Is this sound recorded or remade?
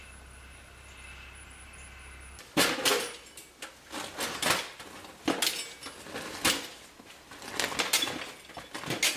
recorded